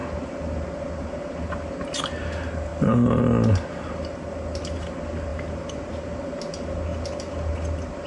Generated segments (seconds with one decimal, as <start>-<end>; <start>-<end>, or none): 5.3-5.9

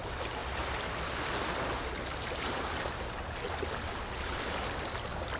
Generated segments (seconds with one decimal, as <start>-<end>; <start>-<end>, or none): none